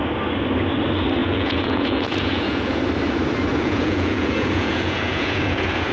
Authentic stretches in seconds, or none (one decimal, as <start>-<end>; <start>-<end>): 0.0-1.2; 2.8-3.5